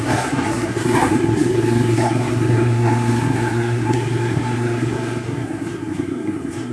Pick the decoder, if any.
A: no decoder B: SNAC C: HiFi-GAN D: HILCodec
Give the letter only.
B